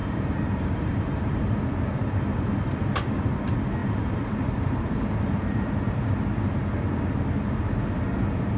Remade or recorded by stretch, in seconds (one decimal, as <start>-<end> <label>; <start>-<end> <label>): 0.0-1.4 remade; 1.4-2.0 recorded; 2.0-2.5 remade; 2.5-3.8 recorded; 3.8-6.1 remade; 6.1-8.6 recorded